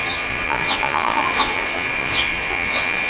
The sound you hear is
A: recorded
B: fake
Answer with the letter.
B